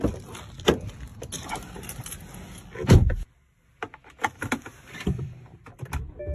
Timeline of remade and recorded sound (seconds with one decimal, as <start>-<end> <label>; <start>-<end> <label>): 0.0-6.3 recorded